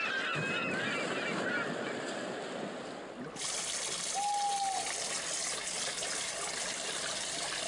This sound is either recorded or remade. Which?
recorded